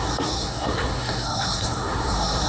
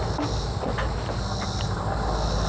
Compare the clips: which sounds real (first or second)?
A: second